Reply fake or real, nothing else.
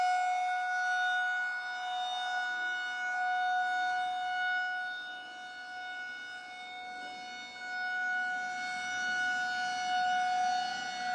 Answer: real